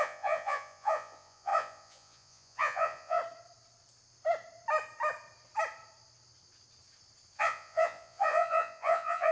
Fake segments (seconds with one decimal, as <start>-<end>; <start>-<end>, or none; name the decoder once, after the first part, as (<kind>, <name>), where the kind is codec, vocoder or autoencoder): 0.0-3.2 (vocoder, Vocos); 7.4-9.3